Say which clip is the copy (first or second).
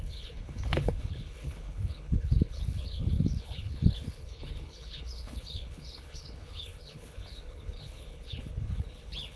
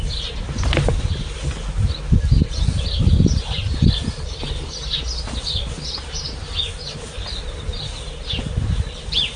first